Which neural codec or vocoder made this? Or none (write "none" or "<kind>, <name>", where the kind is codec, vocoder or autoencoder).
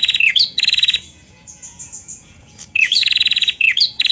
vocoder, Vocos